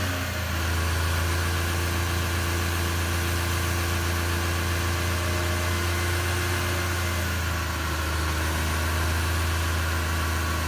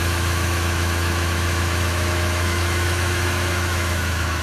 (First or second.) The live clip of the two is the first